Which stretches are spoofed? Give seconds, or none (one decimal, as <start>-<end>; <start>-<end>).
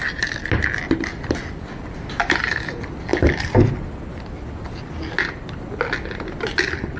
none